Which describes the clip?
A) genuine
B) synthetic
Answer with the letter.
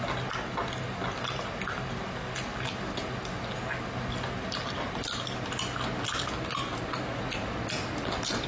A